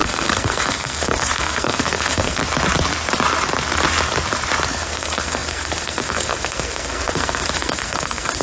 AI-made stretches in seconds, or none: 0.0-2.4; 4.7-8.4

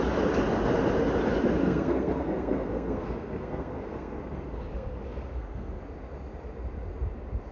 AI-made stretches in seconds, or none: 1.6-5.8

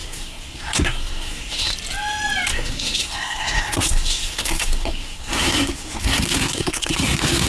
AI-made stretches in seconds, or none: 0.0-1.7; 2.5-7.5

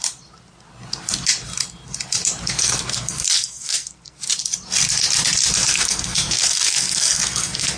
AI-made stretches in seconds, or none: 2.4-4.3; 5.6-7.8

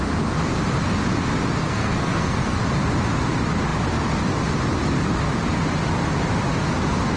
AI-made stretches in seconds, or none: 1.6-2.6

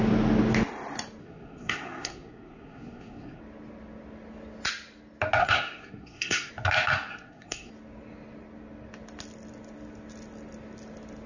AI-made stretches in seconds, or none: 1.2-3.4; 5.4-6.5; 7.1-7.7

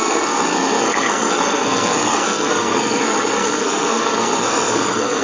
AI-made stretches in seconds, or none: 0.0-5.2